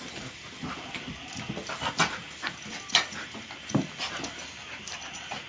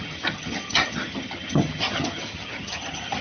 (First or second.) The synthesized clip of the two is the second